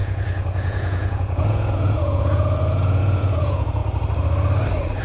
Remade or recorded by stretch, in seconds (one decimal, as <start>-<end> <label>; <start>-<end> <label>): 0.0-3.8 remade; 3.8-5.0 recorded